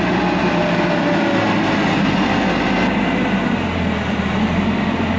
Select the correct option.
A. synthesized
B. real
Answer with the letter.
B